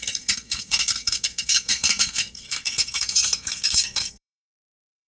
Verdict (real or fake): fake